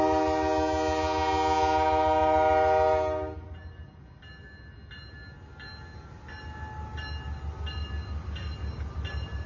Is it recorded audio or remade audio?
recorded